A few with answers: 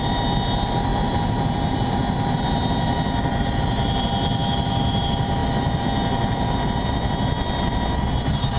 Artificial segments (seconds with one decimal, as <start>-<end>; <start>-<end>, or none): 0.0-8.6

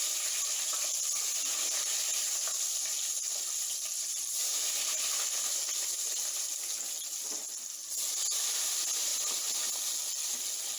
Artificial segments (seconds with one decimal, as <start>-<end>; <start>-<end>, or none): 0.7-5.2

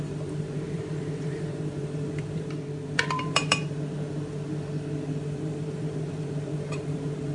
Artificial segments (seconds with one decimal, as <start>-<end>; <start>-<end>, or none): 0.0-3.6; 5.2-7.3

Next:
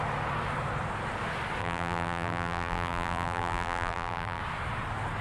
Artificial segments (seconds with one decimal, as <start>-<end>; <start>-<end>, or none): 1.6-4.4

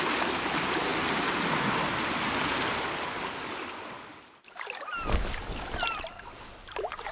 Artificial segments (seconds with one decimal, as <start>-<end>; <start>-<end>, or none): none

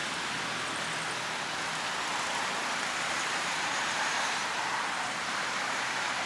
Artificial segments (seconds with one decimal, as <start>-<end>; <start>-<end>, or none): 3.0-4.4; 5.1-6.3

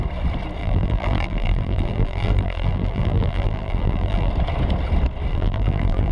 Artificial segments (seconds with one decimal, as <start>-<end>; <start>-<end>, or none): 0.6-4.3; 5.3-6.1